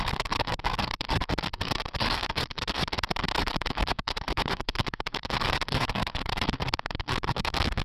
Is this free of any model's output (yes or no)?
no